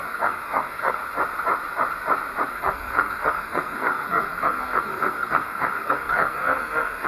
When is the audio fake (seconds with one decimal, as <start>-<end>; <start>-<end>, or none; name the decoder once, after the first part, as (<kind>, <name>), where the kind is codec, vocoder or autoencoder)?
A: 0.0-1.0 (codec, SNAC); 2.5-7.1